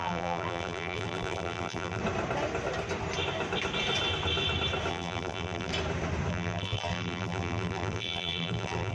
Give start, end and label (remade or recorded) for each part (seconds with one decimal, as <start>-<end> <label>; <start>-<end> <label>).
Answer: 0.0-2.0 remade; 2.0-4.9 recorded; 4.9-5.7 remade; 5.7-6.3 recorded; 6.3-8.9 remade